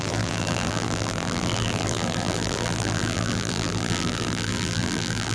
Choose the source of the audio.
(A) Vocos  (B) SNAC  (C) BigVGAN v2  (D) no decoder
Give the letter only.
C